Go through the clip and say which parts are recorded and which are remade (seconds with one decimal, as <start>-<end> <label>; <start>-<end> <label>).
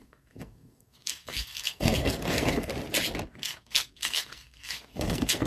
0.0-2.7 remade; 2.7-3.3 recorded; 3.3-5.5 remade